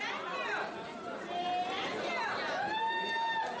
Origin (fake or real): real